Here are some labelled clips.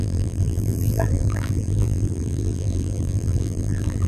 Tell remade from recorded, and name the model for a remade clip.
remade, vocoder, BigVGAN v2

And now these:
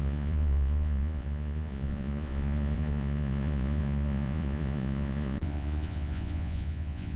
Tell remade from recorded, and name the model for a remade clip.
remade, vocoder, Vocos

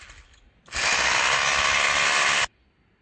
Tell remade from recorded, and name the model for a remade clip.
recorded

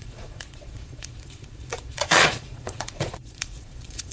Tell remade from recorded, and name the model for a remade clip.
remade, vocoder, Vocos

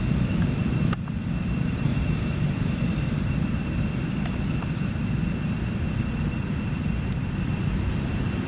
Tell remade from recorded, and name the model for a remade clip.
remade, vocoder, BigVGAN v2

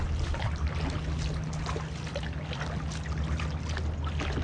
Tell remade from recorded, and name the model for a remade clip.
recorded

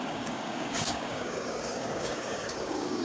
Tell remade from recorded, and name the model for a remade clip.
remade, codec, DAC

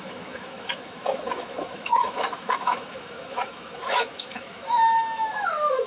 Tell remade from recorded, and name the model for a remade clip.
remade, autoencoder, DAC-VAE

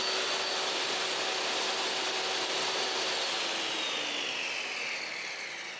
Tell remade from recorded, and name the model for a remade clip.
recorded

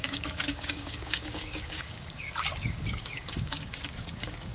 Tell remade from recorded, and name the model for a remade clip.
remade, codec, DAC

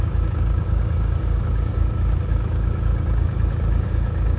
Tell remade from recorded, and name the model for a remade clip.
remade, codec, DAC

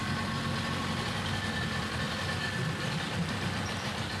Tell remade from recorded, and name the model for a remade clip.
recorded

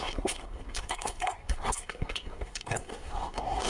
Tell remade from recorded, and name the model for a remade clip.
remade, codec, SNAC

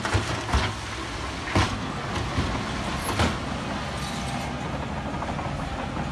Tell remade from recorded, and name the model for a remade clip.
recorded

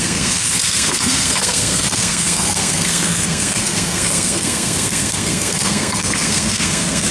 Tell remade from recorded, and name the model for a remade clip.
remade, codec, SNAC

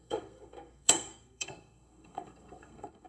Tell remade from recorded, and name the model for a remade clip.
remade, codec, SNAC